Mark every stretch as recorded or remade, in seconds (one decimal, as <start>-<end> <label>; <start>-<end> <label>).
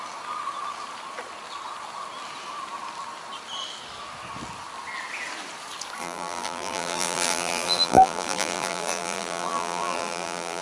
0.0-6.0 recorded; 6.0-10.6 remade